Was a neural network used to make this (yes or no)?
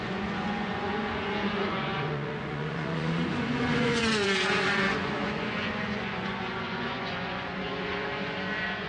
yes